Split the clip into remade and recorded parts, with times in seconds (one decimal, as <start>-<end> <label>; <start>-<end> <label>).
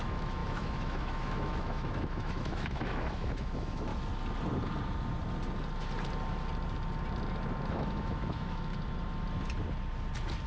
0.0-3.9 remade; 3.9-7.7 recorded; 7.7-8.7 remade; 8.7-10.5 recorded